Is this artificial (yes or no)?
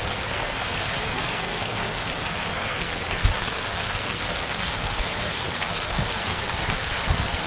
yes